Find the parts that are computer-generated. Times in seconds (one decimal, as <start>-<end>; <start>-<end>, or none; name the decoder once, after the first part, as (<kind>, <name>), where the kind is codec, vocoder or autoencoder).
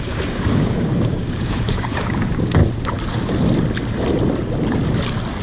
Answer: 0.0-2.6 (codec, DAC)